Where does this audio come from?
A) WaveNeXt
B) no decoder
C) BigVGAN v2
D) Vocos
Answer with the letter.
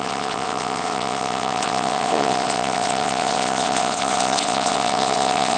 A